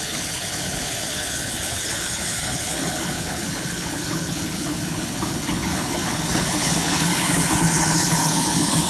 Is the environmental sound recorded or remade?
remade